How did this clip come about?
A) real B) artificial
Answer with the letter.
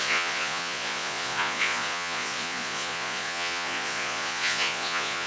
B